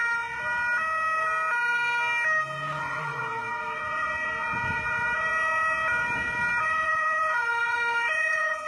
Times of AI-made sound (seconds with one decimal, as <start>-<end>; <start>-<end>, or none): 2.8-3.2; 6.6-8.7